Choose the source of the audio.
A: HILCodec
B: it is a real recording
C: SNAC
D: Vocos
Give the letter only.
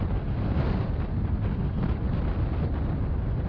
B